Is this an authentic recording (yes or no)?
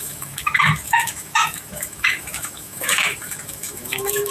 no